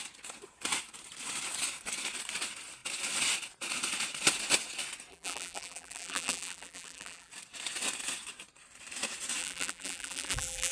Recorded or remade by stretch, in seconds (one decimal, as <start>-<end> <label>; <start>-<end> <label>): 0.0-5.1 recorded; 5.1-7.3 remade; 7.3-9.4 recorded; 9.4-10.7 remade